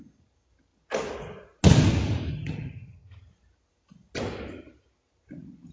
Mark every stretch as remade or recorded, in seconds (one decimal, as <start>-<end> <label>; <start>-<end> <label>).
0.0-2.3 recorded; 2.3-3.3 remade; 3.3-5.7 recorded